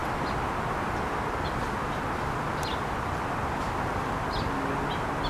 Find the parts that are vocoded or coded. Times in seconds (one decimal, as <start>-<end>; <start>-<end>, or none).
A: none